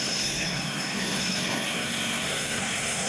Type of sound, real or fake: fake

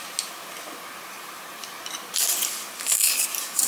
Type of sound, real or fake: real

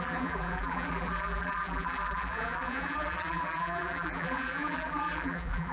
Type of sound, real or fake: fake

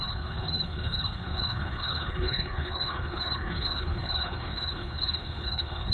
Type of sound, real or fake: fake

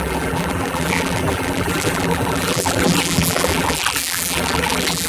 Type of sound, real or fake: fake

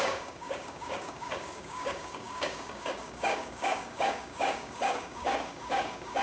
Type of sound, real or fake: fake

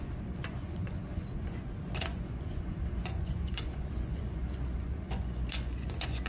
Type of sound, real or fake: fake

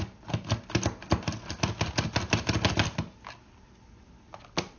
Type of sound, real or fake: real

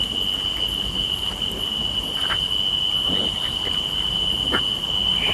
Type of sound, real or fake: real